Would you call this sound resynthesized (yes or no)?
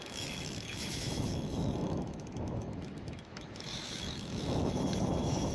yes